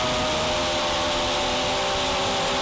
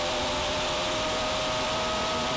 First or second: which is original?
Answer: first